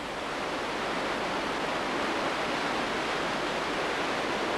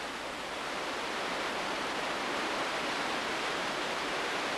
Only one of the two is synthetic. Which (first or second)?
second